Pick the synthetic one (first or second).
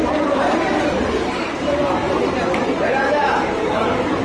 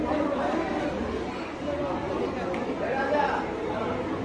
first